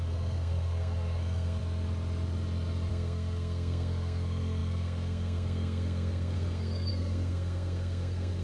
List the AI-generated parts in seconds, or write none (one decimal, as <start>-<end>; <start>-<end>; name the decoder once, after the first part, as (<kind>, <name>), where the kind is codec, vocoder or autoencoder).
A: 0.0-1.6 (codec, SNAC); 2.9-8.4